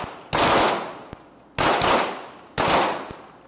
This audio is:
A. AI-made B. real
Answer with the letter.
B